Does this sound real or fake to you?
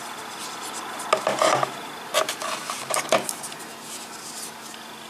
real